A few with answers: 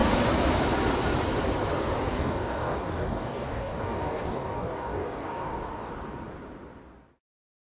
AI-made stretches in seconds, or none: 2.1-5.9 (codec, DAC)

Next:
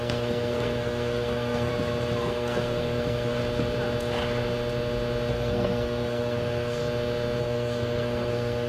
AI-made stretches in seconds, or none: 0.0-1.7 (codec, SNAC); 2.2-3.4; 5.3-6.8; 7.4-8.7